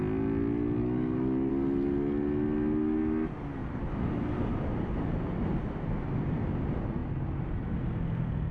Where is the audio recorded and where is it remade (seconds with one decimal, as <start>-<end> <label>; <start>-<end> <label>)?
0.0-0.8 recorded; 0.8-1.5 remade; 1.5-8.5 recorded